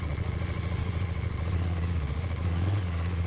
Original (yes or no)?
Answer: no